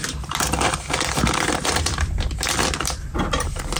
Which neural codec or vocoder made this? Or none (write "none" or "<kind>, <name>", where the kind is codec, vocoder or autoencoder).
vocoder, BigVGAN v2